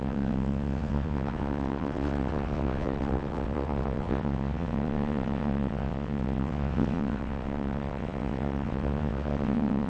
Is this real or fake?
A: fake